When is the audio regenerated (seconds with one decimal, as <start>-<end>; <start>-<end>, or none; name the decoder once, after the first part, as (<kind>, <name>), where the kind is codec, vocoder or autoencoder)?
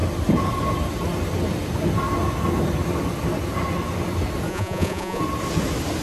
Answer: 4.5-5.2 (vocoder, Vocos)